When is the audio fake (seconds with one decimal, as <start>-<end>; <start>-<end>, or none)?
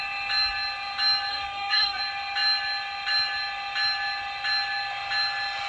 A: 1.3-2.0